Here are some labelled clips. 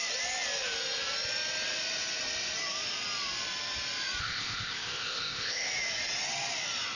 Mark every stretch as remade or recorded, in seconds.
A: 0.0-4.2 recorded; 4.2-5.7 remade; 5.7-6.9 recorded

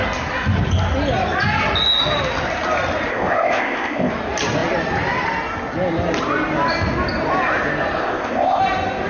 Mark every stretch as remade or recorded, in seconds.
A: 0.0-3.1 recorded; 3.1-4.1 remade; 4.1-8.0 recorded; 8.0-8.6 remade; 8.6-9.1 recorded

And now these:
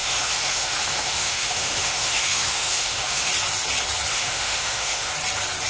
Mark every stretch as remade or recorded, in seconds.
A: 0.0-3.3 remade; 3.3-4.1 recorded; 4.1-5.1 remade; 5.1-5.7 recorded

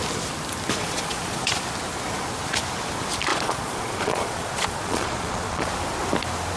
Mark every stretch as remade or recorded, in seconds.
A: 0.0-0.8 recorded; 0.8-1.6 remade; 1.6-3.3 recorded; 3.3-5.7 remade; 5.7-6.6 recorded

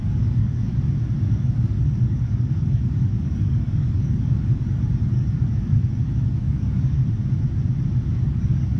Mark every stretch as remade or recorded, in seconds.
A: 0.0-0.7 remade; 0.7-1.2 recorded; 1.2-7.0 remade; 7.0-8.1 recorded; 8.1-8.8 remade

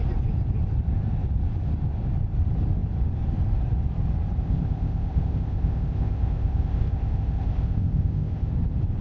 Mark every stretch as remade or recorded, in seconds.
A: 0.0-4.4 recorded; 4.4-8.5 remade; 8.5-9.0 recorded

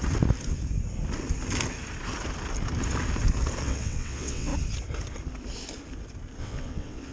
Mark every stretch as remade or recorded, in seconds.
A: 0.0-3.6 recorded; 3.6-4.5 remade; 4.5-6.4 recorded; 6.4-7.1 remade